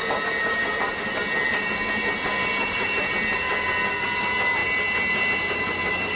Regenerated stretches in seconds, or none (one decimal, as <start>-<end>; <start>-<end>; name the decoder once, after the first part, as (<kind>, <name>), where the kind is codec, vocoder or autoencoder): 2.5-3.1 (vocoder, BigVGAN v2)